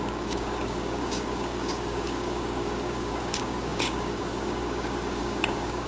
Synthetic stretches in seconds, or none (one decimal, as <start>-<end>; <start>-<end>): 0.0-5.9